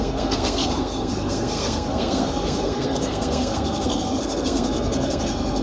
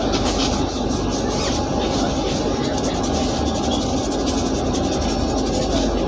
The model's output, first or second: first